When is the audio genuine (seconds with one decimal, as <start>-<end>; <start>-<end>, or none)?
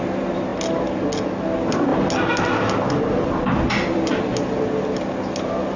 0.0-5.8